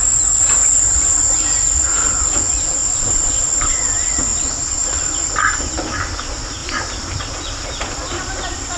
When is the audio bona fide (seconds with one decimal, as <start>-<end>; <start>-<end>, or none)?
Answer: 0.0-2.8; 3.8-6.6; 7.2-8.8